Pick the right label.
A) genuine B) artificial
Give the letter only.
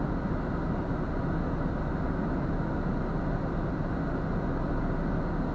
A